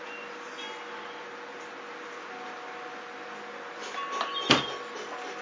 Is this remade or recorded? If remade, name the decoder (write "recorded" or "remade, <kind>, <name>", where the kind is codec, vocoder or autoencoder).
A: recorded